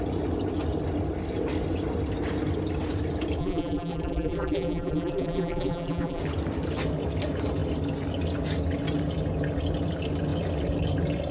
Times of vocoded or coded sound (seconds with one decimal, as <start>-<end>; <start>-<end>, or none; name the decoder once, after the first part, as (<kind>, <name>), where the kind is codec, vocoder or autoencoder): 3.4-6.2 (vocoder, BigVGAN v2)